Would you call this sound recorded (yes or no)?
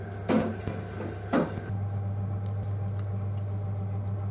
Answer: yes